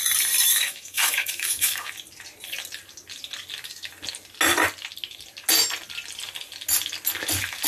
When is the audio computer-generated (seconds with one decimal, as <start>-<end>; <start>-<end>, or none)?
0.5-1.9